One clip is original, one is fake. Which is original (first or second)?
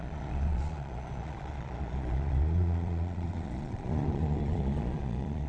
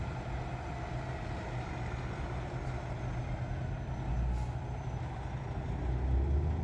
second